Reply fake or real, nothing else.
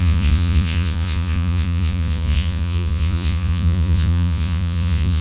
fake